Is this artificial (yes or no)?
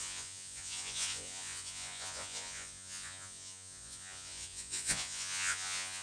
yes